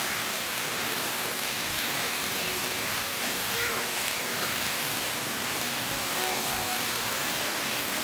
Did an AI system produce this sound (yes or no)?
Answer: yes